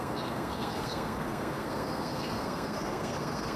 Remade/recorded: remade